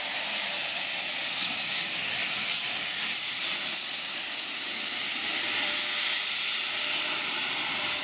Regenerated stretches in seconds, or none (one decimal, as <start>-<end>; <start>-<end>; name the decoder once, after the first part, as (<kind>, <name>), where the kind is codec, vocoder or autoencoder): 1.4-2.8 (codec, DAC)